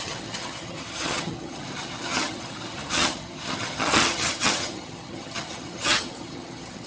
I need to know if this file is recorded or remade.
remade